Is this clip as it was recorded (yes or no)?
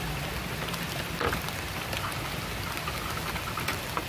yes